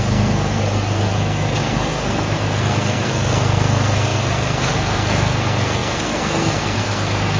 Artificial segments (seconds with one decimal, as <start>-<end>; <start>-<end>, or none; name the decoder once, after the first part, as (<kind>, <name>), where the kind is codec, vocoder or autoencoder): 0.0-7.4 (codec, SNAC)